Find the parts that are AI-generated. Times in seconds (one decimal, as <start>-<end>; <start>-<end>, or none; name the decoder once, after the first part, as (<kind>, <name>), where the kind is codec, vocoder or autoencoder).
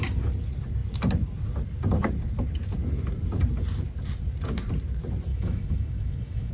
5.3-6.5 (autoencoder, DAC-VAE)